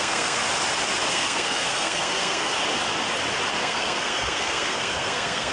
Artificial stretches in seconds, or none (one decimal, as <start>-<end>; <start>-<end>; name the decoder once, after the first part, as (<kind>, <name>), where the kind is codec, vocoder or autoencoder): 0.0-0.4 (codec, SNAC); 1.1-2.5; 3.5-5.5